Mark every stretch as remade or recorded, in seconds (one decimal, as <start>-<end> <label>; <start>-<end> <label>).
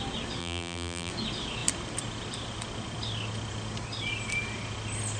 0.0-0.4 recorded; 0.4-1.1 remade; 1.1-5.2 recorded